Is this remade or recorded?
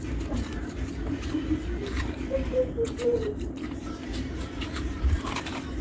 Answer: remade